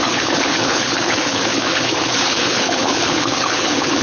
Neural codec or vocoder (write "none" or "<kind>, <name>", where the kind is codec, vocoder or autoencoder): codec, HILCodec